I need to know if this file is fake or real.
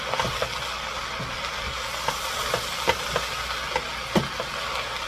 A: real